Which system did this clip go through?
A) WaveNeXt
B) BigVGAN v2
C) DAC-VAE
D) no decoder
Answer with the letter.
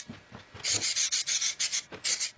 D